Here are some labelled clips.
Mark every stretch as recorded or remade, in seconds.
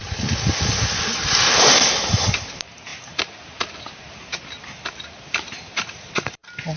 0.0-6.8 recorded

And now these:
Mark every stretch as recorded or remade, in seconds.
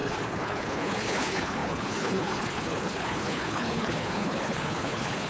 0.0-5.3 remade